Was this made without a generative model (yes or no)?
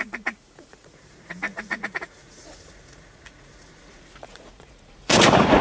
no